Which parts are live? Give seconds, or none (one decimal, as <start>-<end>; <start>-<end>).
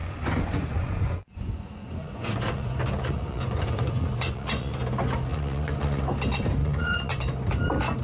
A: 4.8-5.3; 6.0-6.6; 7.2-8.0